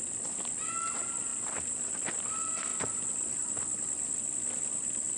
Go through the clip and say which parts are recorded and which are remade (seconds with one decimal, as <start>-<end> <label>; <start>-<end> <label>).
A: 0.0-1.3 recorded; 1.3-1.9 remade; 1.9-2.7 recorded; 2.7-3.5 remade; 3.5-5.2 recorded

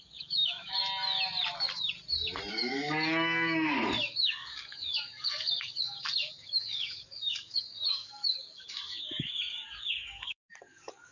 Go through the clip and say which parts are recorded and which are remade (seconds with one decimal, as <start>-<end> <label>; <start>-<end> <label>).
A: 0.0-0.8 remade; 0.8-2.5 recorded; 2.5-11.1 remade